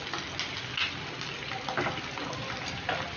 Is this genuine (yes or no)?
yes